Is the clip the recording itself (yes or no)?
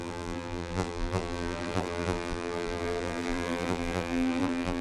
no